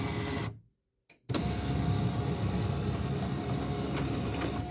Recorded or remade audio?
recorded